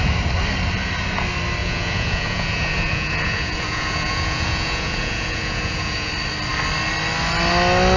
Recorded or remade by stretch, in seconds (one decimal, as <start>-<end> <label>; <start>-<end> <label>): 0.0-1.6 recorded; 1.6-6.1 remade; 6.1-8.0 recorded